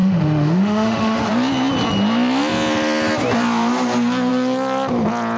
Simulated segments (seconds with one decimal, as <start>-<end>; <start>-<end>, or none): 0.0-1.3